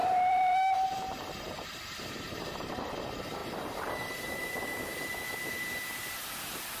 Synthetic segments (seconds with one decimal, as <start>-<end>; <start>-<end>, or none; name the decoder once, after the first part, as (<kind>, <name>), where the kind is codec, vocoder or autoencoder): 0.0-2.7 (vocoder, BigVGAN v2)